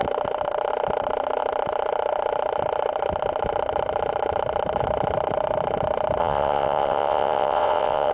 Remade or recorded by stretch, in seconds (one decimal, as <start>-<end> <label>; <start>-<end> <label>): 0.0-6.2 recorded; 6.2-8.1 remade